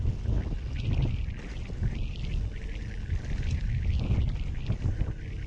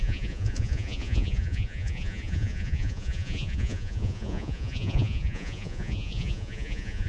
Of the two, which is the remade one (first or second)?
second